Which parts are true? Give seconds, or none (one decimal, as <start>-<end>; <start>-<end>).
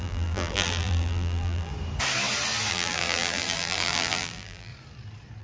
1.7-2.7; 4.7-5.4